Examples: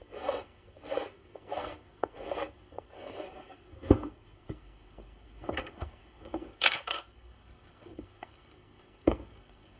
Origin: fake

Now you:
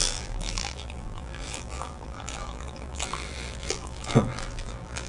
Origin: fake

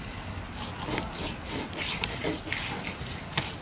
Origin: real